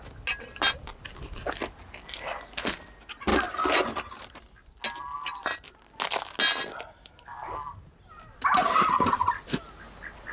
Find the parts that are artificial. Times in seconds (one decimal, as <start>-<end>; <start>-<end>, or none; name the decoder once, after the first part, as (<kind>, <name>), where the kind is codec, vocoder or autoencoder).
none